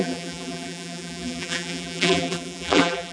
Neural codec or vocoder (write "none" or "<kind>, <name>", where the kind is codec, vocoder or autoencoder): vocoder, BigVGAN v2